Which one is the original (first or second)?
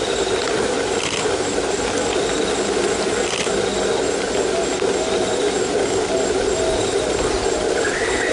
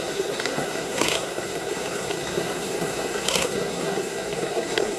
first